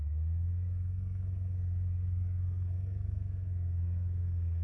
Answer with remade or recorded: remade